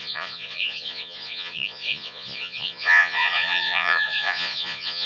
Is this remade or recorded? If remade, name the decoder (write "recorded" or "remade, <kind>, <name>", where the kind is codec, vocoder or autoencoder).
remade, vocoder, Vocos